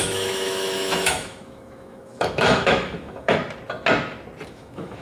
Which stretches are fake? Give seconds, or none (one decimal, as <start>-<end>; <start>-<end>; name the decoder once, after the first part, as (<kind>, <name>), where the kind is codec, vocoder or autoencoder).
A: 0.0-3.4 (autoencoder, DAC-VAE); 4.5-5.0